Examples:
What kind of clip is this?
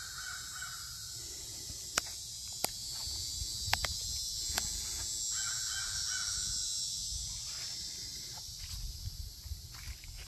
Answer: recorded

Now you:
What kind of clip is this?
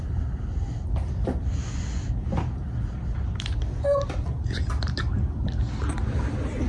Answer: recorded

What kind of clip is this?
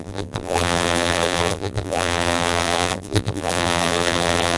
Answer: remade